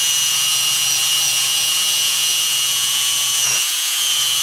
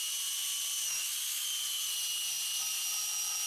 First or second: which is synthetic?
first